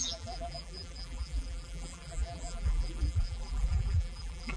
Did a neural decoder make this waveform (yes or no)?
yes